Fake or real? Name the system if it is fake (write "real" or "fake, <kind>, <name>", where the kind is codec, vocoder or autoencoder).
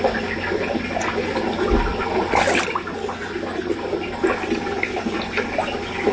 real